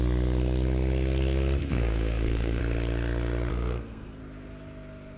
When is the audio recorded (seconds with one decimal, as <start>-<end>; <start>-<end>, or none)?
0.0-1.6; 2.6-3.5; 4.2-5.2